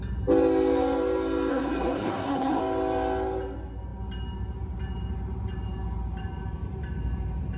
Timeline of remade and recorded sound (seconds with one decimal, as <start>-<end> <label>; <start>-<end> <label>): 0.0-1.5 recorded; 1.5-2.6 remade; 2.6-7.6 recorded